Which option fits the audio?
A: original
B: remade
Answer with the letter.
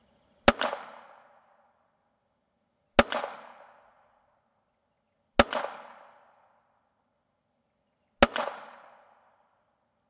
A